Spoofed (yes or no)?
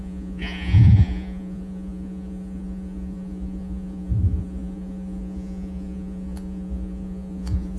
yes